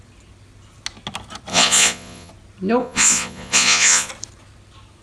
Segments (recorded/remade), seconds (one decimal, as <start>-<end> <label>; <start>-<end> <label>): 0.0-1.5 recorded; 1.5-2.3 remade; 2.3-2.8 recorded; 2.8-4.1 remade; 4.1-5.0 recorded